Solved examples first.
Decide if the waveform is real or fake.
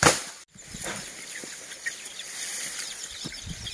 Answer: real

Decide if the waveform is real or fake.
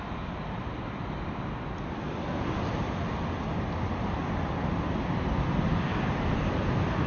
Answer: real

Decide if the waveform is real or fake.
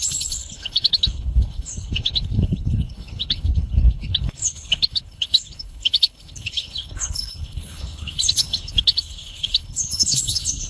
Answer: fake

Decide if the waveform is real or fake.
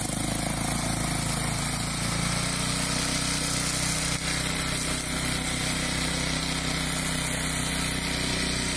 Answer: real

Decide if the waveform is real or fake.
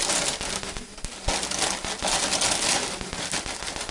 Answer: real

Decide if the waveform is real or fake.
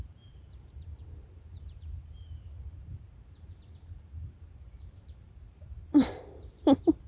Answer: fake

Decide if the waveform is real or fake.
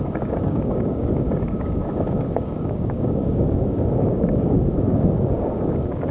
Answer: fake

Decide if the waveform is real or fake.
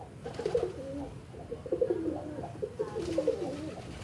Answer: fake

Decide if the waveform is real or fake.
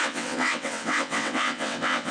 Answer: fake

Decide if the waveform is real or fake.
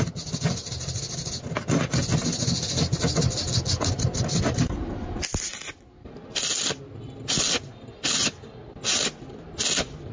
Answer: real